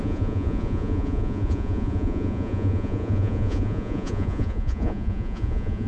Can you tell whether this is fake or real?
fake